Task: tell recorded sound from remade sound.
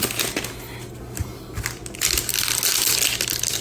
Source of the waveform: recorded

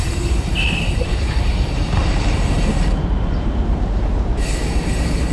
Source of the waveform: remade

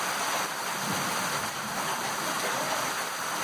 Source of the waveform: remade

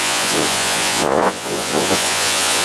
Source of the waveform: remade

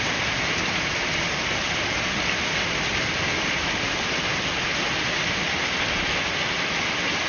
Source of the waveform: recorded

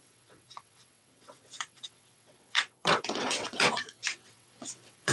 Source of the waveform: remade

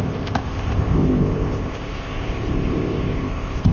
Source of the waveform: remade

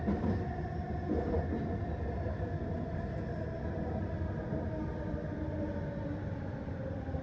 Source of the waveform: recorded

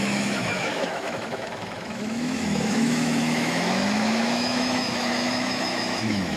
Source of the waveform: remade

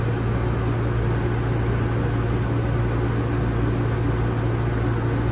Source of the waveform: recorded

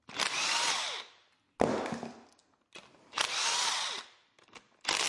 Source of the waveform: recorded